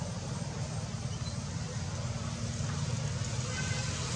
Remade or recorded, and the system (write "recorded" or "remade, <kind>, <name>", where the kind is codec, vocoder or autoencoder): recorded